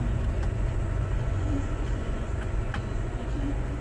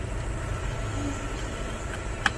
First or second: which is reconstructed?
first